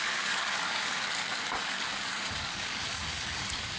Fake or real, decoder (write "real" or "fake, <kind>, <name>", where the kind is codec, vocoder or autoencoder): fake, codec, DAC